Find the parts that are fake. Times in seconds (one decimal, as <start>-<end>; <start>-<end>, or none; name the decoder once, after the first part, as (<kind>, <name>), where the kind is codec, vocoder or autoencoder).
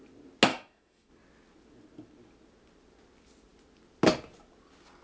0.5-1.1 (autoencoder, DAC-VAE)